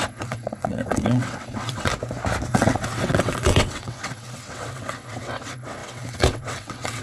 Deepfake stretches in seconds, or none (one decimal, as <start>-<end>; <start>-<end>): 0.0-1.9; 2.5-7.0

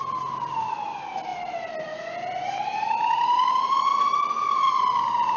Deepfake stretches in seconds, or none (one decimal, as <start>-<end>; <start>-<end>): none

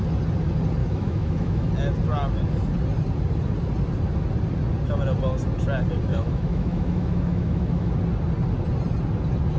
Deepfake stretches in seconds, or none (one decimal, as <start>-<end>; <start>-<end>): 0.8-1.7; 6.1-7.9

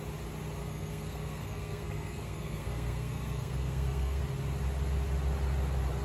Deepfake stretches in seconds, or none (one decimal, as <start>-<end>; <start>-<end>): 0.6-4.2

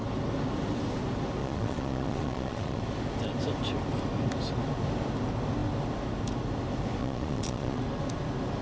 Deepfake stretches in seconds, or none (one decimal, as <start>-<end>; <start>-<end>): 1.4-2.8; 7.0-7.8

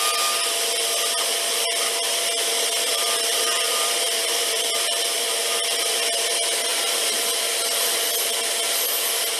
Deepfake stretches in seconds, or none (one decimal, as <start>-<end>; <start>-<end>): 2.9-5.4; 6.7-7.4

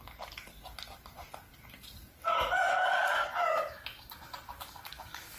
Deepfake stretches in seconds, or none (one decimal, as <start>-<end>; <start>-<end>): 2.7-5.4

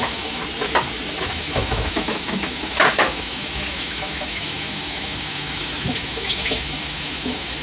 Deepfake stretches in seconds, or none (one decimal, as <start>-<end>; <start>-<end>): 0.0-0.4; 1.2-7.6